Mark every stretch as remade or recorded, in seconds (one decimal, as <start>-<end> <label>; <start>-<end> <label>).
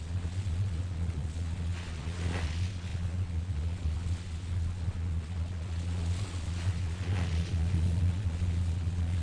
0.0-9.2 remade